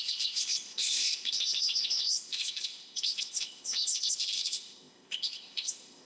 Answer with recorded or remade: remade